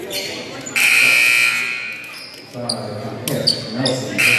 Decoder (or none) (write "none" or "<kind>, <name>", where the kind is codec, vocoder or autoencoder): none